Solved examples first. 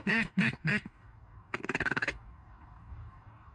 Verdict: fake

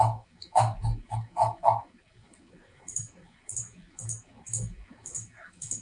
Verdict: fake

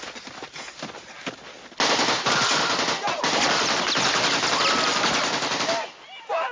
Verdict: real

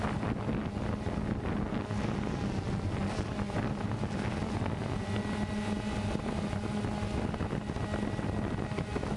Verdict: real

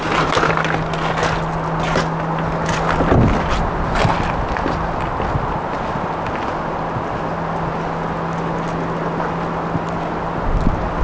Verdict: real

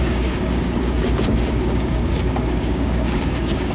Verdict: fake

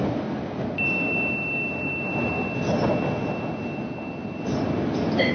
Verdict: real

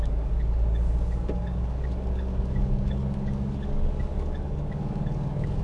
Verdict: fake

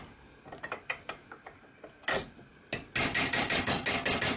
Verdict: real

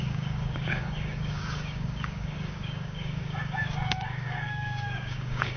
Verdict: fake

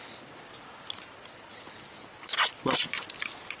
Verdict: real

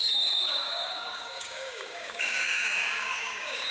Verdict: fake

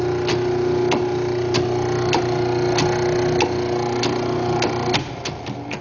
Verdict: real